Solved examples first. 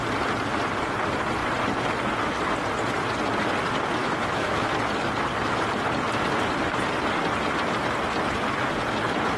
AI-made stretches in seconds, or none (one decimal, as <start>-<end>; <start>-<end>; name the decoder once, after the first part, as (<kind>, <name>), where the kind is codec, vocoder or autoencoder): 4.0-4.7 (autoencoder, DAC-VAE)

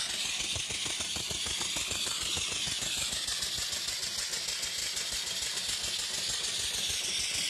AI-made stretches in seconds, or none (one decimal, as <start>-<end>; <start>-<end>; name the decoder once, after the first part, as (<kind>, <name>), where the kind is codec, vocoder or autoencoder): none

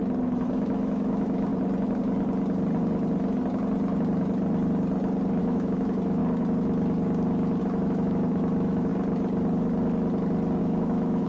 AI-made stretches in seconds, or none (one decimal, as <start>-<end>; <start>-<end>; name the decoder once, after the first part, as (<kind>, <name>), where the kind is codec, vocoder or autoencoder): 0.5-1.5 (autoencoder, DAC-VAE); 5.4-6.2; 7.6-8.9; 10.6-11.3

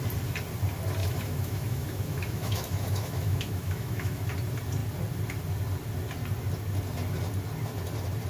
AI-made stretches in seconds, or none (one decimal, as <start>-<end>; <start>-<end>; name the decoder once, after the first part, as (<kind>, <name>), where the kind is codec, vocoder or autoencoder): 1.0-4.3 (autoencoder, DAC-VAE)